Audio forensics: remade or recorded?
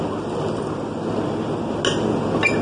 recorded